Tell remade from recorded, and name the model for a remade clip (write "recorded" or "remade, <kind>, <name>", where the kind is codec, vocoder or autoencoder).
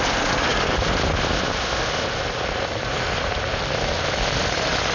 recorded